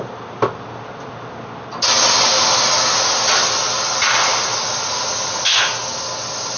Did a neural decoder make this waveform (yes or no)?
no